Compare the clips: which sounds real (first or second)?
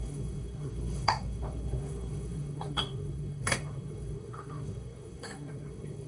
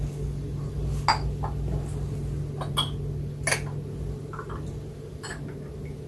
second